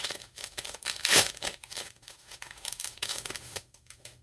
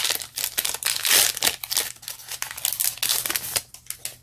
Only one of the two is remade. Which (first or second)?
first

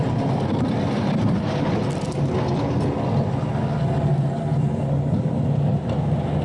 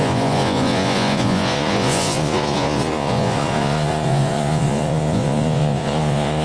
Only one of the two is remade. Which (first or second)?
second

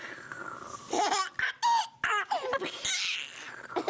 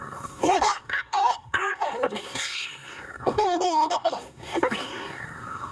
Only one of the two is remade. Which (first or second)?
second